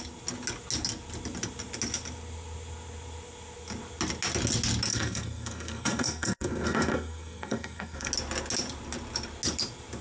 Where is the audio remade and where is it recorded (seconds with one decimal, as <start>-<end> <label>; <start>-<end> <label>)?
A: 0.0-4.9 recorded; 4.9-8.1 remade; 8.1-10.0 recorded